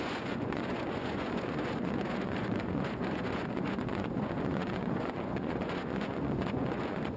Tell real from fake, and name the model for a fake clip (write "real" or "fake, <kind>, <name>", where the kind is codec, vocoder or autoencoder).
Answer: fake, vocoder, Vocos